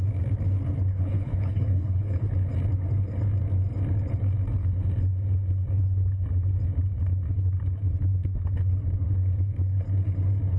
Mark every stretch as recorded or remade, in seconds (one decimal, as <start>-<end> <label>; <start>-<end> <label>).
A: 0.0-0.9 recorded; 0.9-2.3 remade; 2.3-10.6 recorded